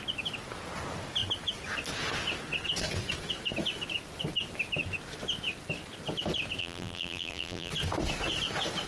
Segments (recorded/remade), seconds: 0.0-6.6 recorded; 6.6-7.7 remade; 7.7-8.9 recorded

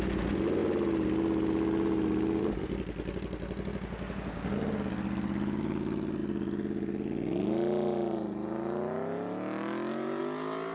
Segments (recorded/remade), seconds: 0.0-10.7 recorded